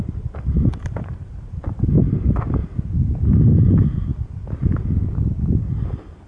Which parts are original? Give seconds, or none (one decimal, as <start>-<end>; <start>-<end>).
0.0-6.3